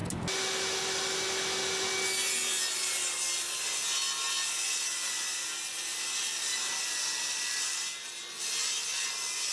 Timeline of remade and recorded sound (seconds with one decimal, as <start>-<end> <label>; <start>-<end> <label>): 0.0-9.5 recorded